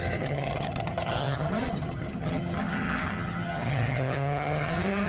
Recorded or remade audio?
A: remade